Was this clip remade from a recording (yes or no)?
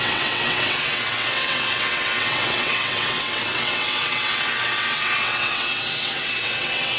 yes